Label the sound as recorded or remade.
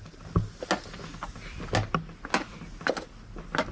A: recorded